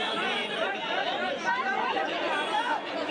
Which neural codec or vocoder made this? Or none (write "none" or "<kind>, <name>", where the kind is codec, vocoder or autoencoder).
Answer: vocoder, Vocos